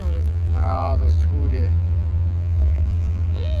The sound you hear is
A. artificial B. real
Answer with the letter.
A